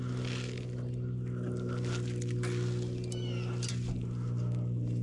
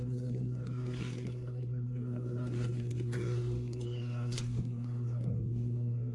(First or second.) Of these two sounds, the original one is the first